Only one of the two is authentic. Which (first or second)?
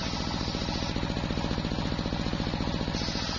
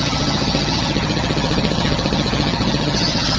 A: first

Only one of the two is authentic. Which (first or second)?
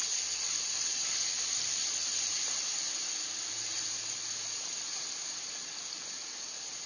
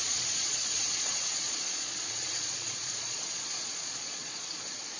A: first